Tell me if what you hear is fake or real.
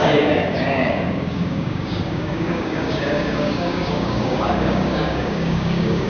fake